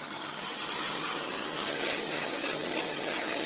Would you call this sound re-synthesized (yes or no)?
yes